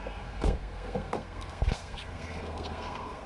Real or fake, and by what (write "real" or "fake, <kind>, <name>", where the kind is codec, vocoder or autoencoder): fake, codec, SNAC